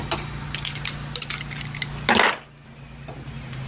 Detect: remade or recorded recorded